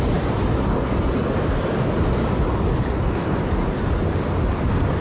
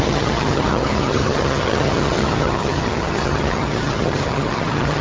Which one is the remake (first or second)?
second